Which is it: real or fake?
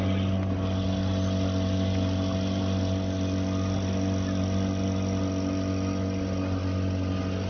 real